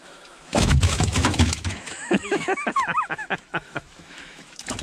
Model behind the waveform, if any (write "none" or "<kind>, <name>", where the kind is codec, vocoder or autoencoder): autoencoder, DAC-VAE